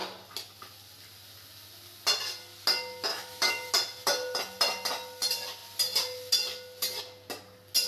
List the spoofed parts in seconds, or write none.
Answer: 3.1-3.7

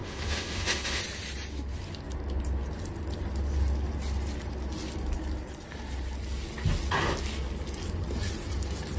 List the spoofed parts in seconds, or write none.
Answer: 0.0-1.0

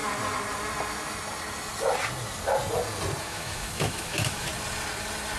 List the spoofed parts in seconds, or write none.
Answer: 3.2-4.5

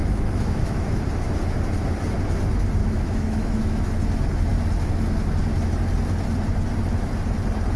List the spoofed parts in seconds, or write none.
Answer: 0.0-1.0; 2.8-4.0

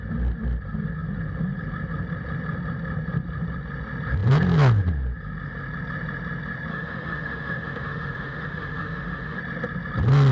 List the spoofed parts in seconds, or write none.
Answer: 6.7-9.4

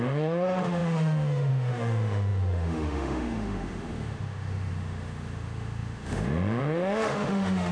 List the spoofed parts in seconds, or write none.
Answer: 0.0-7.7